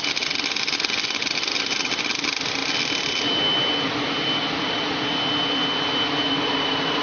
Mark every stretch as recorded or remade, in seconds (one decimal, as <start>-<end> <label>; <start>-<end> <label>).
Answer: 0.0-7.0 recorded